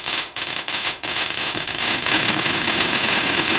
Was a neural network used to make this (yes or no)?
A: yes